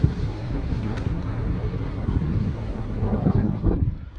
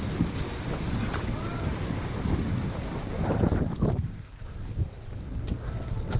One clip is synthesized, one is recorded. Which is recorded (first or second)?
second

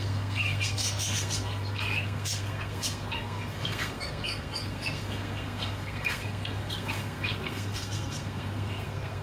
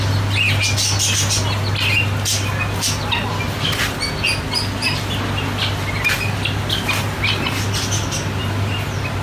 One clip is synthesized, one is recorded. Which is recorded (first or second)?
second